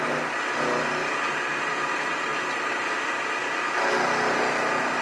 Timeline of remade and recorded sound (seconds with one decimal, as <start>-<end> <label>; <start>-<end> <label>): 0.0-5.0 recorded